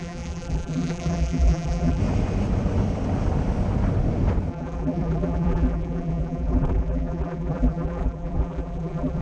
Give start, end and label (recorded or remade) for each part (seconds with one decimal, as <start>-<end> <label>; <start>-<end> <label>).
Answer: 0.0-2.0 remade; 2.0-4.5 recorded; 4.5-9.2 remade